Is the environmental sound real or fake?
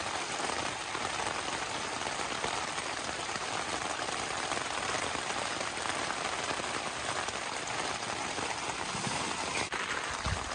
fake